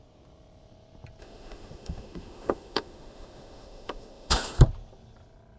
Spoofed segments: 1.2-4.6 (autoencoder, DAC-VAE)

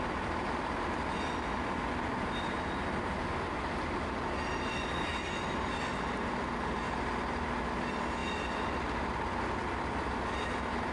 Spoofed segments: none

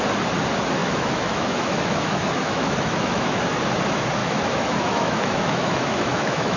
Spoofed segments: 0.8-3.4 (autoencoder, DAC-VAE); 4.2-6.6

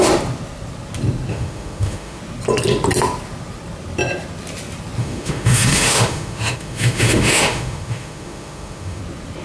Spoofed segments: 1.3-2.2 (autoencoder, DAC-VAE); 5.0-9.0